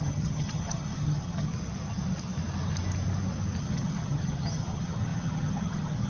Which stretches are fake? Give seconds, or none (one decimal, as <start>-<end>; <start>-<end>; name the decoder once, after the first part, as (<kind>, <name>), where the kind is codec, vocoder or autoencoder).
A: 0.0-1.5 (vocoder, HiFi-GAN); 3.6-6.1